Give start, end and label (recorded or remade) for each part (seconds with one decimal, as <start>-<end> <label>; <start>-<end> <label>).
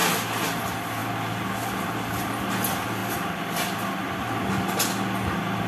0.0-5.7 recorded